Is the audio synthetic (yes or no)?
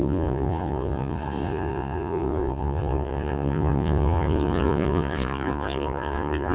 yes